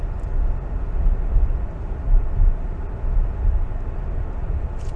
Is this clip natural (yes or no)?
yes